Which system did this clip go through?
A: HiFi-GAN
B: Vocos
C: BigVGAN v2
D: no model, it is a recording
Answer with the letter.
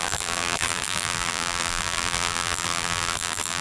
C